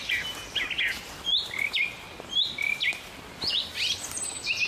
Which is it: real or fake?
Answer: real